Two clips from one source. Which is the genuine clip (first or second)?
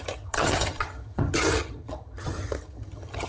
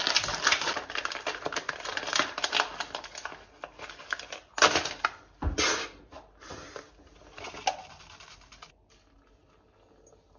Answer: second